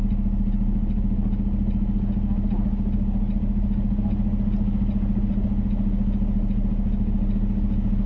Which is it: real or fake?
real